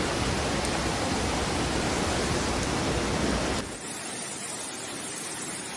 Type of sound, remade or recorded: recorded